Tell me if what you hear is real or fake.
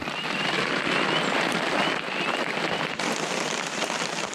real